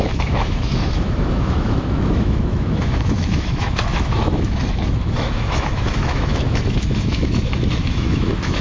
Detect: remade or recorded remade